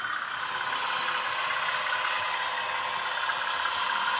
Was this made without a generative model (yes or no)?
yes